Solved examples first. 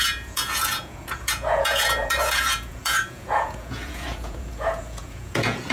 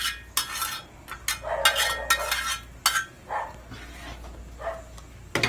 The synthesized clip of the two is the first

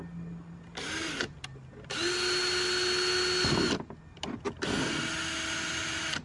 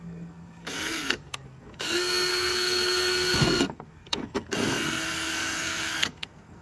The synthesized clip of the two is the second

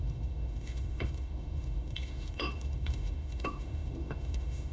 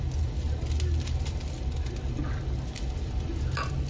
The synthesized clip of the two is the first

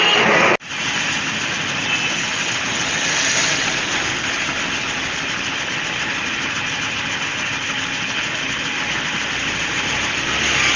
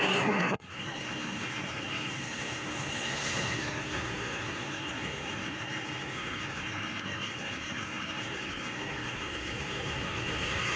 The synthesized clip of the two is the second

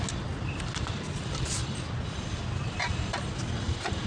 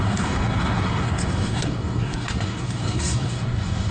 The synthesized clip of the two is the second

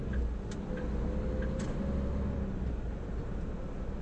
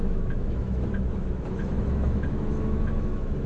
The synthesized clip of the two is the second